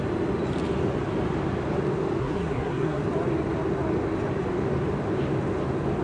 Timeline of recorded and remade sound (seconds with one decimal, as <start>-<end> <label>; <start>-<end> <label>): 0.0-2.2 recorded; 2.2-3.0 remade; 3.0-6.0 recorded